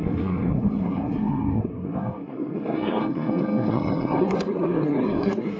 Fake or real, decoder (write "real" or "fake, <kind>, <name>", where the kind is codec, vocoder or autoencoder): fake, codec, SNAC